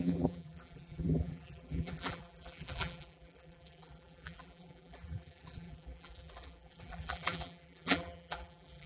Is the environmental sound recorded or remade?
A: remade